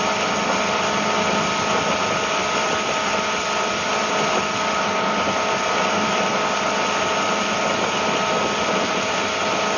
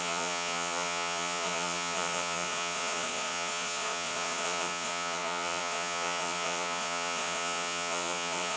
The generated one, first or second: second